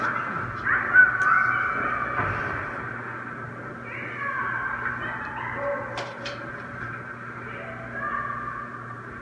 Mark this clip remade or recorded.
recorded